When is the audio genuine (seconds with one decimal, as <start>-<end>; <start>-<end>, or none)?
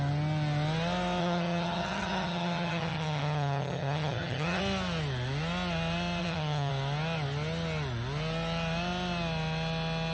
0.0-1.2; 4.6-6.2; 6.7-10.1